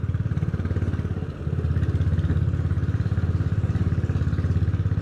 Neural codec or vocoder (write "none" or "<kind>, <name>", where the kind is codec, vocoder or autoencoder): none